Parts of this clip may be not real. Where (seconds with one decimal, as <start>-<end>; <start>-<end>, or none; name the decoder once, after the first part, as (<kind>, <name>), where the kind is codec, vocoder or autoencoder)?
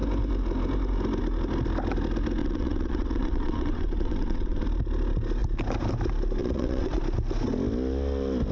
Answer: 2.4-4.6 (vocoder, WaveNeXt); 6.4-7.0